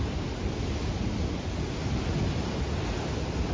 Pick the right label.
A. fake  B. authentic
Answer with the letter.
B